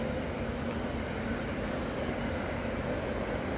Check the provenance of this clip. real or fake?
real